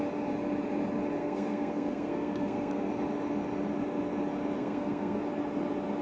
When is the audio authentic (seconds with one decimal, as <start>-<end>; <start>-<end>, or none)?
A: 0.0-1.2; 2.9-4.6; 5.2-6.0